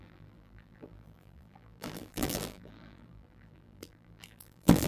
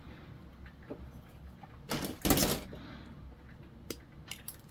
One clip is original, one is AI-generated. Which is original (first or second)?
second